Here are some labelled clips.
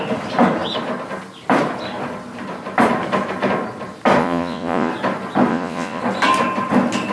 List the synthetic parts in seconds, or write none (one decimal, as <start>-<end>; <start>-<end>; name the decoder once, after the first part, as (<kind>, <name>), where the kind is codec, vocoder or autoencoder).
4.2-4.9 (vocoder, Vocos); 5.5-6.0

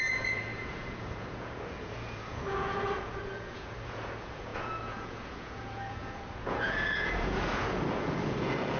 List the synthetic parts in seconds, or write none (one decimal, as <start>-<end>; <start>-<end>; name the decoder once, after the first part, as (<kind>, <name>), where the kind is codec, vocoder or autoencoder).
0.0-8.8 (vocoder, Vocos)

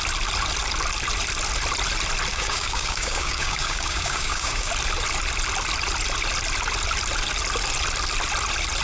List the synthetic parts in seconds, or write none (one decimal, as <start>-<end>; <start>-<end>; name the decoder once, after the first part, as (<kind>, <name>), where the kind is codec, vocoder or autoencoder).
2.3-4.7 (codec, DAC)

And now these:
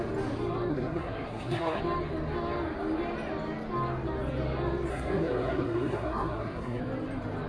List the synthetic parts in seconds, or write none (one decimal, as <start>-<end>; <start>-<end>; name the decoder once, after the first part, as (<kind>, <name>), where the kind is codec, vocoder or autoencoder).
0.7-1.8 (codec, SNAC); 4.9-6.8

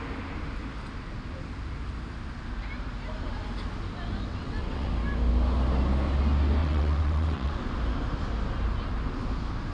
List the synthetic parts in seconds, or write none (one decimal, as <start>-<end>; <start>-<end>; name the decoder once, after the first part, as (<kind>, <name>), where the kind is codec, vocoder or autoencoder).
4.3-4.9 (vocoder, WaveNeXt); 6.6-7.6